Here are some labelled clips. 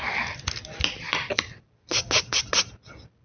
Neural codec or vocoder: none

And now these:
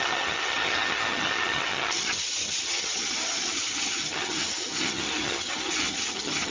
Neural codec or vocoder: vocoder, HiFi-GAN